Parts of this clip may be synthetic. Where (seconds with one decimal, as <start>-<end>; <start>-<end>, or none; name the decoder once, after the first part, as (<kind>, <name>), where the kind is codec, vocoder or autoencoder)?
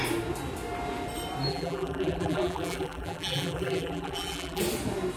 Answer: 1.5-4.6 (vocoder, BigVGAN v2)